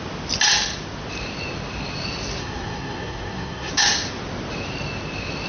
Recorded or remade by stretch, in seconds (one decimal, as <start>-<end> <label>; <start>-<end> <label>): 0.0-2.4 recorded; 2.4-3.7 remade; 3.7-5.5 recorded